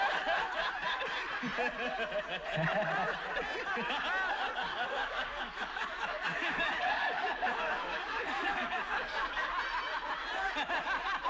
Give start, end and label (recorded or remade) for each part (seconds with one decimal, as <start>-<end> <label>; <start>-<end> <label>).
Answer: 0.0-4.7 recorded; 4.7-9.5 remade; 9.5-11.3 recorded

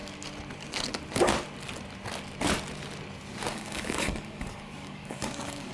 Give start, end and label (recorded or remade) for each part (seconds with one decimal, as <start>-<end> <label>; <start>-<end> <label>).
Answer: 0.0-3.5 recorded; 3.5-5.7 remade